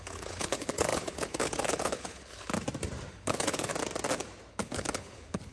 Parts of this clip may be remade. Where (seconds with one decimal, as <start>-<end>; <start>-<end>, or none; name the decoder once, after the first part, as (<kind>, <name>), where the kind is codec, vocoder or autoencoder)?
0.0-2.5 (codec, HILCodec); 3.1-3.7; 4.5-5.5